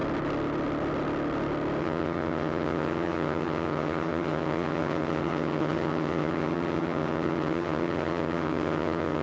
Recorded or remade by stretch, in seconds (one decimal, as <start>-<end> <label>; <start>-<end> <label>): 0.0-1.8 recorded; 1.8-9.2 remade